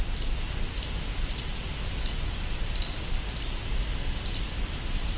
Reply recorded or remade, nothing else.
recorded